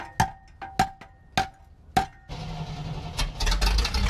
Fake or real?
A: real